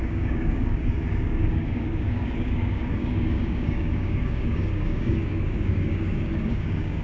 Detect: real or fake fake